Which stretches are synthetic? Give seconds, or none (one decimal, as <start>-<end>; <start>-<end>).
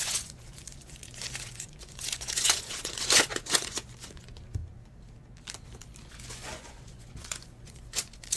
0.0-4.6; 6.1-8.4